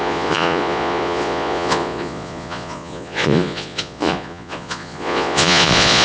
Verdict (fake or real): fake